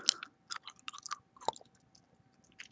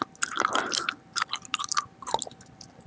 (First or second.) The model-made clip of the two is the second